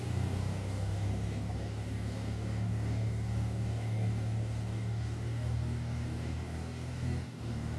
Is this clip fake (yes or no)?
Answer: yes